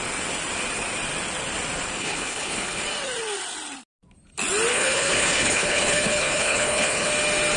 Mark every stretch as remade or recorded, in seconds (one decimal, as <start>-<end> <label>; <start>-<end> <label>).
0.0-2.0 recorded; 2.0-2.8 remade; 2.8-4.7 recorded; 4.7-7.1 remade; 7.1-7.6 recorded